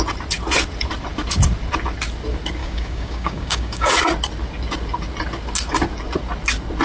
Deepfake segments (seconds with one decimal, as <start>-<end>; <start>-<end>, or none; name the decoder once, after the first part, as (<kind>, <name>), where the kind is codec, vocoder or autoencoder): 2.6-3.9 (codec, DAC)